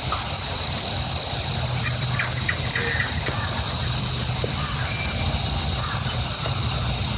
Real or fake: real